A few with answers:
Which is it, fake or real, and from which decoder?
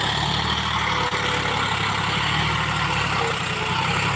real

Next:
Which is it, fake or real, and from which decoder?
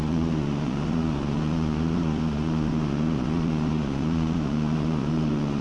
fake, vocoder, Vocos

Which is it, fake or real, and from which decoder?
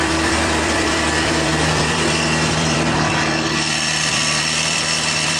fake, vocoder, BigVGAN v2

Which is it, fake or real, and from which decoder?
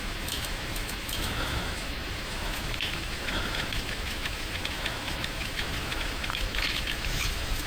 fake, autoencoder, DAC-VAE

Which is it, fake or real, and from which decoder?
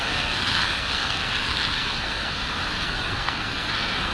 fake, codec, SNAC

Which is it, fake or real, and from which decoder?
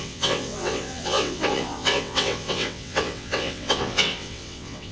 fake, vocoder, WaveNeXt